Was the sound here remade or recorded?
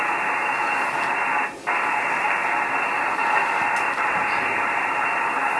recorded